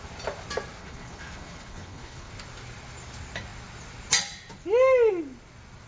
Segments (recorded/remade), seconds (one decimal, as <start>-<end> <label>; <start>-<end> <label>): 0.0-0.8 recorded; 0.8-2.3 remade; 2.3-5.9 recorded